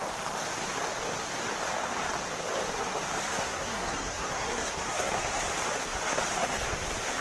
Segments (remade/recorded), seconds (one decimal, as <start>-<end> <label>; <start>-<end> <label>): 0.0-3.3 recorded; 3.3-5.4 remade; 5.4-7.2 recorded